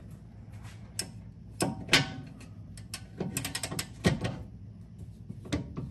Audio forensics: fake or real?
real